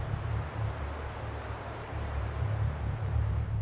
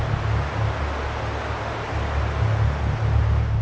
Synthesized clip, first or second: first